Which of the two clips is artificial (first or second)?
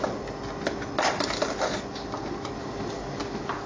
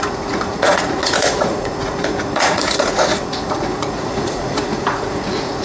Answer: second